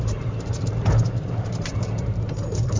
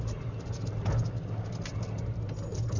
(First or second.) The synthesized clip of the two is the first